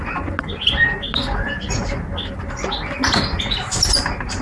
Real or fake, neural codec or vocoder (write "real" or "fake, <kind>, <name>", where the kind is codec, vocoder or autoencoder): real